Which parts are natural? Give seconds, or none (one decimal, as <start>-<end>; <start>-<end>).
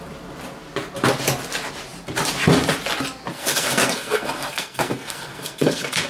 0.0-3.3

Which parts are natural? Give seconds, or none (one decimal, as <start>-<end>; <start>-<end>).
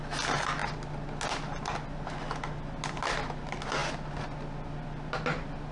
0.0-5.7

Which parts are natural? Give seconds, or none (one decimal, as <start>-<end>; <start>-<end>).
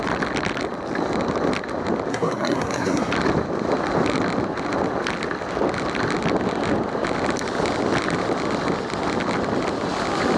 0.0-2.1; 3.1-10.4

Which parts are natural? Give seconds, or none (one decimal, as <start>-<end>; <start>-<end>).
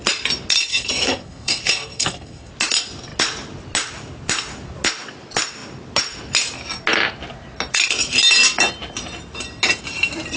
0.0-0.7; 2.5-10.4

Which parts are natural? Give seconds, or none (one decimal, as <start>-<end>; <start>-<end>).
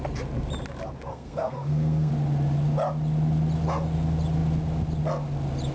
0.0-1.1; 2.1-5.7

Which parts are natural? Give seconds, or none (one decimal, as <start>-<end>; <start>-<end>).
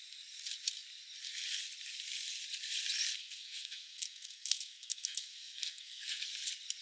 0.0-3.2; 6.3-6.8